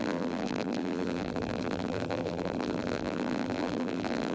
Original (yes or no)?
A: no